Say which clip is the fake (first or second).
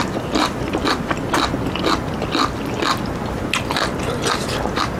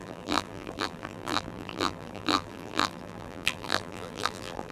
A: second